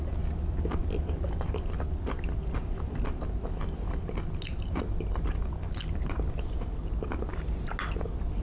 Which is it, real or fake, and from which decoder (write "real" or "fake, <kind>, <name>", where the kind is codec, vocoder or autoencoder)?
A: real